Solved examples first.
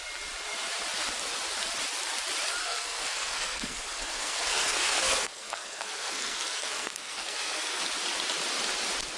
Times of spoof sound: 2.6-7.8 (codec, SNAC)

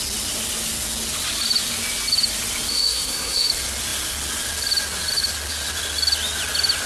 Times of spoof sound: 2.7-3.5 (codec, SNAC)